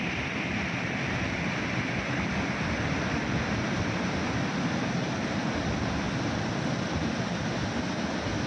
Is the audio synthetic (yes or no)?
no